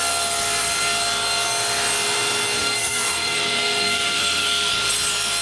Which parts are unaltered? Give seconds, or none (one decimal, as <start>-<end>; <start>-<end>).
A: 0.0-2.6; 4.7-5.4